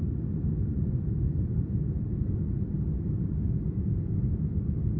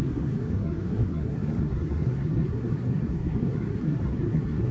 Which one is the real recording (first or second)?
first